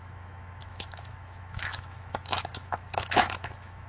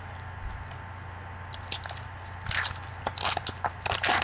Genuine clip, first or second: second